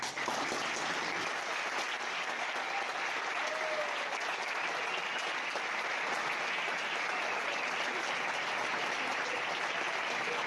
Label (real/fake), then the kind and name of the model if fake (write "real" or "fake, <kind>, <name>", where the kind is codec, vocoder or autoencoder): real